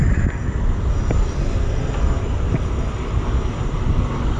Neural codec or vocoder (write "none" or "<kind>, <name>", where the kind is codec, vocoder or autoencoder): none